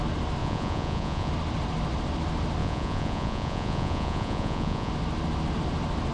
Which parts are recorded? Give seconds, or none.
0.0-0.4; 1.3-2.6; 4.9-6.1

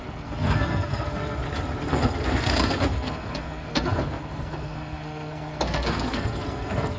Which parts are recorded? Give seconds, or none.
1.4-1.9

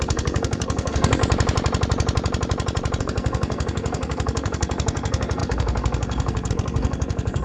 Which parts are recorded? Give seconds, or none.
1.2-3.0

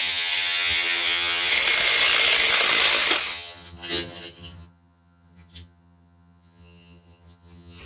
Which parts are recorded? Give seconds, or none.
1.5-3.3